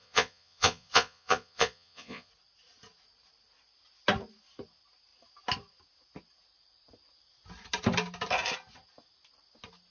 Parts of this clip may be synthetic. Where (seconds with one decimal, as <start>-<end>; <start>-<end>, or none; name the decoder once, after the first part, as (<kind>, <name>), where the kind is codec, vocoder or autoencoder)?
0.0-2.3 (vocoder, Vocos)

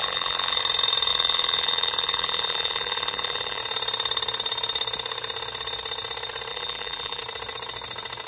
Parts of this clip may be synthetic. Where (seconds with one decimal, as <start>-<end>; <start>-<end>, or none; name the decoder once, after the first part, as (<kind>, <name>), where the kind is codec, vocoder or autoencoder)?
0.0-0.6 (vocoder, BigVGAN v2); 1.1-3.6; 6.5-7.2